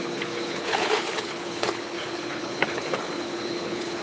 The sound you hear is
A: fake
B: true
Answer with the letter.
A